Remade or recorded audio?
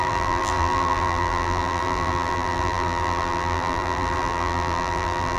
remade